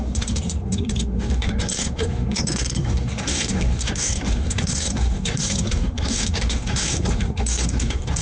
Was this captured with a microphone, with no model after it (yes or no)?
no